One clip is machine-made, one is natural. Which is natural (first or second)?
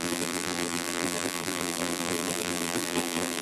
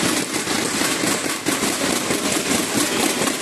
second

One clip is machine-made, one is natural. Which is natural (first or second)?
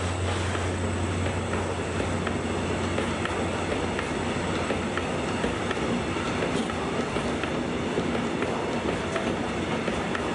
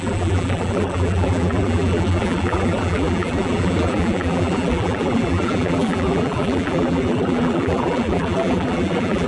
first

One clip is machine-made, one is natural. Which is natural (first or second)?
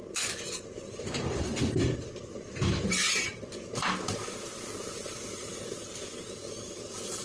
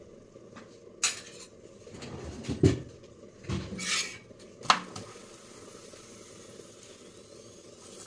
second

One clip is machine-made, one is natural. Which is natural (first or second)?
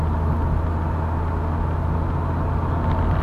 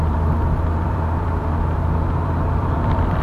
first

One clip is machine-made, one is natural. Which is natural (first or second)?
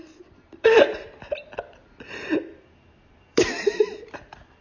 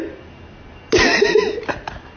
second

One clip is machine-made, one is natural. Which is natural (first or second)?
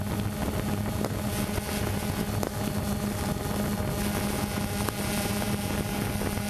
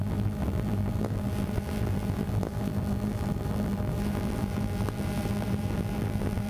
first